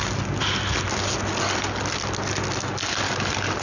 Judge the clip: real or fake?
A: real